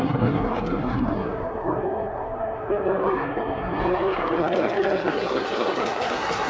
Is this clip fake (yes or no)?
yes